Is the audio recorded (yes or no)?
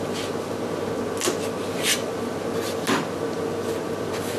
yes